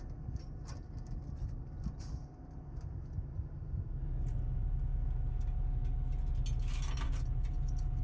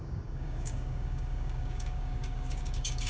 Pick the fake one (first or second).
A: second